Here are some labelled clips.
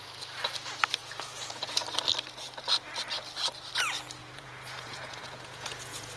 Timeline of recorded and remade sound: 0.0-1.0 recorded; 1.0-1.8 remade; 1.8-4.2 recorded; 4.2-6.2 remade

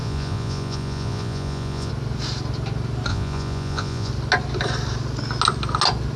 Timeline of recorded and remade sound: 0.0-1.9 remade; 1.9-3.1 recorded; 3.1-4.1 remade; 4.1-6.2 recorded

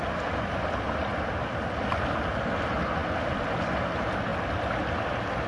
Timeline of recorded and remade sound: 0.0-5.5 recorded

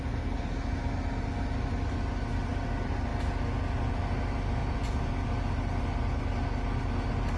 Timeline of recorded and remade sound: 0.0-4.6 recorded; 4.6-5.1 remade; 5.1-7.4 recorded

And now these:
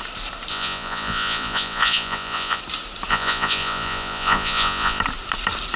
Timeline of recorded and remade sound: 0.0-0.5 recorded; 0.5-2.6 remade; 2.6-3.1 recorded; 3.1-5.0 remade; 5.0-5.8 recorded

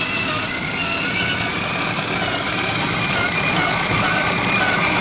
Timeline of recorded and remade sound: 0.0-5.0 recorded

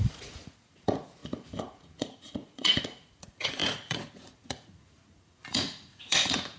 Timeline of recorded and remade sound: 0.0-6.6 remade

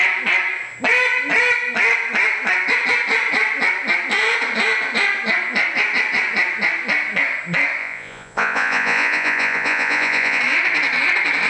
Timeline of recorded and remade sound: 0.0-7.8 recorded; 7.8-10.4 remade; 10.4-11.5 recorded